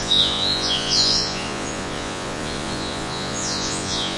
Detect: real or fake fake